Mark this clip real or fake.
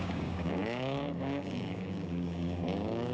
fake